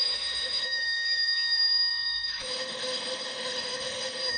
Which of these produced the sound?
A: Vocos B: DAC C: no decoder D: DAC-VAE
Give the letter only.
D